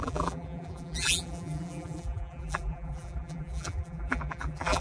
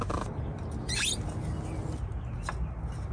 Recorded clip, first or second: second